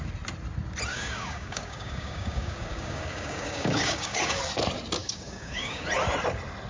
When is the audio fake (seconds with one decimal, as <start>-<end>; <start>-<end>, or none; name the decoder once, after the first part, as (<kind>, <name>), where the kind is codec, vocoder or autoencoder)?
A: 0.9-4.4 (codec, DAC); 5.0-5.9